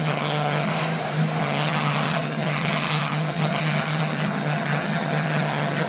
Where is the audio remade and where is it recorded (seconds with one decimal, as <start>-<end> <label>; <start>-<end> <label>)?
0.0-0.7 remade; 0.7-1.4 recorded; 1.4-5.9 remade